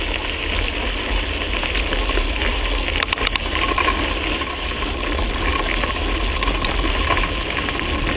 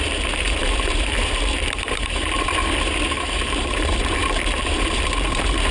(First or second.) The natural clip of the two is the first